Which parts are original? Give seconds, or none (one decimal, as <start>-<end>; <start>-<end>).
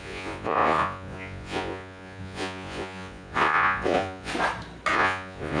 4.3-4.9